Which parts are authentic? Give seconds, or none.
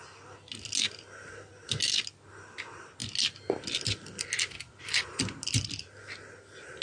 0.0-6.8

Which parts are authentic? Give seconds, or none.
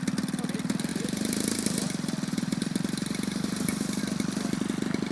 0.0-0.9; 4.0-5.1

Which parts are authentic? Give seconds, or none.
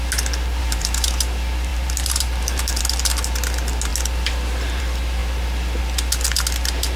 0.0-0.6; 1.2-1.7; 2.8-7.0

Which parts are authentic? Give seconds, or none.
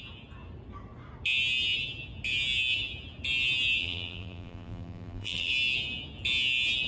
0.0-3.8; 5.5-6.9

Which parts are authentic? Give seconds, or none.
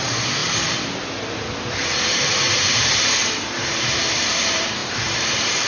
none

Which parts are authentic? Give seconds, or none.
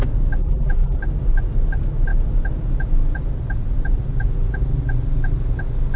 0.0-0.4; 1.0-6.0